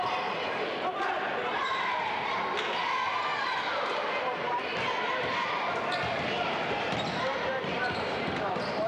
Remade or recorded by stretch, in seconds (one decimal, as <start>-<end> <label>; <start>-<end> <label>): 0.0-1.6 remade; 1.6-6.1 recorded; 6.1-8.9 remade